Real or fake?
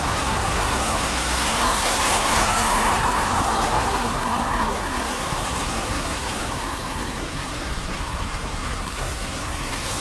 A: fake